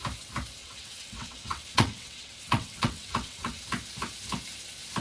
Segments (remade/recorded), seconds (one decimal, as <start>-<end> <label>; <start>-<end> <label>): 0.0-0.6 recorded; 0.6-3.6 remade; 3.6-5.0 recorded